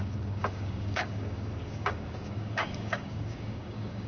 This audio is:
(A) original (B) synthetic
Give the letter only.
B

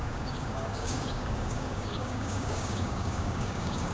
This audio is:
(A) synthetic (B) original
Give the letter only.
A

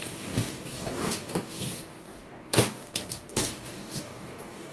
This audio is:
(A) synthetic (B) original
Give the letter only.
A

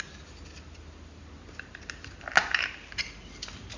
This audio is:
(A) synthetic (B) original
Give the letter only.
B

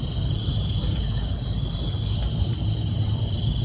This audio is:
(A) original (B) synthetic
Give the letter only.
A